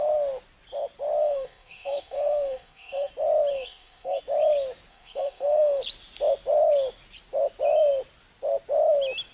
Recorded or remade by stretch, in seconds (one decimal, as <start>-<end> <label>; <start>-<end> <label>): 0.0-1.2 recorded; 1.2-3.1 remade; 3.1-3.5 recorded; 3.5-4.2 remade; 4.2-4.9 recorded; 4.9-5.8 remade; 5.8-9.3 recorded